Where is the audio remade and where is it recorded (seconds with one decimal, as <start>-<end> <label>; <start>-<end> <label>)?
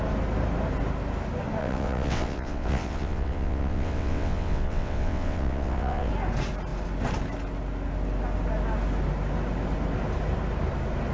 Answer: 0.0-1.6 recorded; 1.6-6.1 remade; 6.1-11.1 recorded